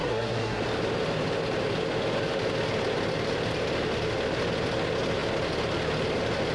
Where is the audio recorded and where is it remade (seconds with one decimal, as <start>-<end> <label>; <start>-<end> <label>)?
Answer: 0.0-0.6 remade; 0.6-6.5 recorded